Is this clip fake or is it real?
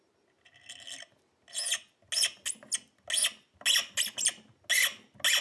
real